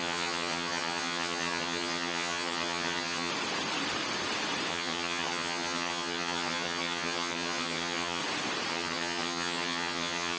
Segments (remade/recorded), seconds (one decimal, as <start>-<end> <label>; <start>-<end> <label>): 0.0-3.3 remade; 3.3-4.7 recorded; 4.7-8.2 remade; 8.2-8.7 recorded; 8.7-10.4 remade